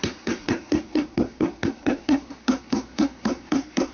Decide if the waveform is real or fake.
fake